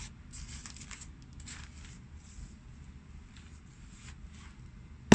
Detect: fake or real real